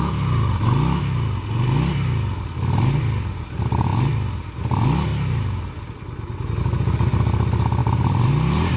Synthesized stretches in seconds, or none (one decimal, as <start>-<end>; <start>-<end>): 5.1-5.7; 7.8-8.3